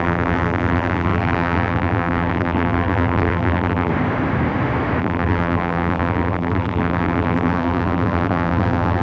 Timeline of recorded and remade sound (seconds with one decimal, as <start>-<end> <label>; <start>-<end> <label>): 0.0-3.9 remade; 3.9-5.0 recorded; 5.0-9.0 remade